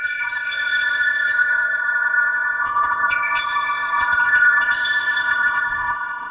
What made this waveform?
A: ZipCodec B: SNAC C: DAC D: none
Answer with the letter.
A